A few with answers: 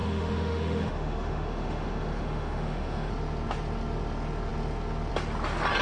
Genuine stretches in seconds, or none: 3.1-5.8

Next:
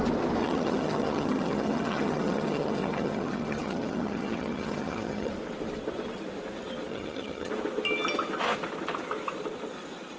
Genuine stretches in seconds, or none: 0.0-0.4; 5.3-6.9; 7.5-10.2